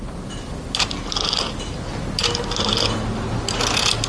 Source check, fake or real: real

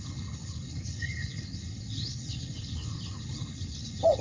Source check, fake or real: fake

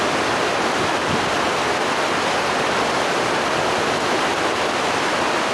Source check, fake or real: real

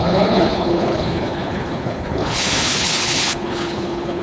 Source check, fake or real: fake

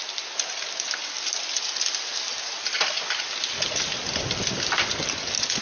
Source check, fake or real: real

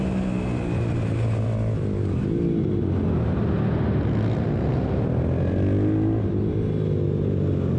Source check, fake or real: real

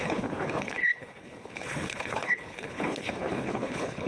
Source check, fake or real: fake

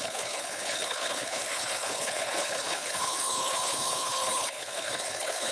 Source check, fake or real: fake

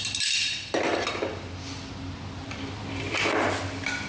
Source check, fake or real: real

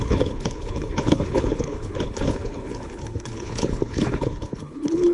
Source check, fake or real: fake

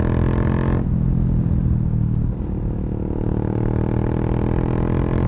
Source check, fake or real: real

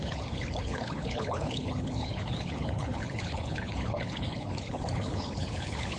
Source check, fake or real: fake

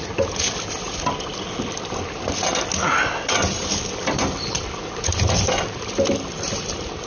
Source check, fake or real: real